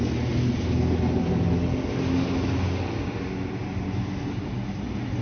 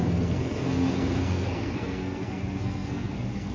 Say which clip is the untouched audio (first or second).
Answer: first